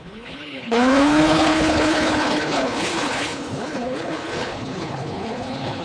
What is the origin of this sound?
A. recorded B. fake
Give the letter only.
B